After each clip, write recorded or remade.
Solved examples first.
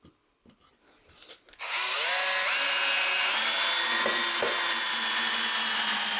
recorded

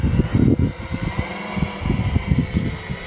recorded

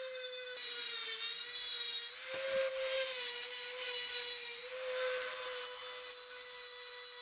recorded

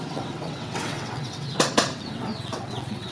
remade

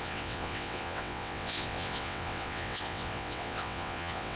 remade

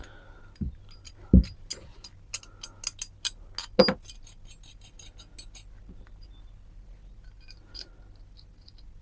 recorded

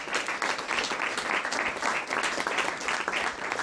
recorded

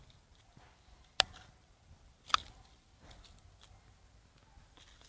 recorded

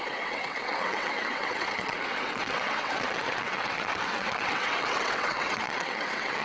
remade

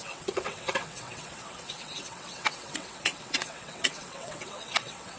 remade